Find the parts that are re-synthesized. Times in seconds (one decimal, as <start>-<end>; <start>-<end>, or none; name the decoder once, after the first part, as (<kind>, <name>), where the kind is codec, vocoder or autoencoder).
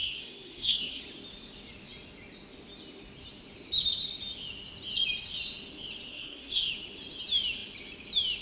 0.0-1.0 (codec, SNAC); 6.1-6.7